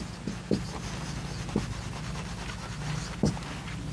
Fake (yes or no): no